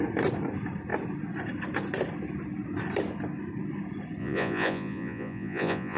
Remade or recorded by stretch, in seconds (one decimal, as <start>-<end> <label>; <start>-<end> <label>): 0.0-4.2 recorded; 4.2-6.0 remade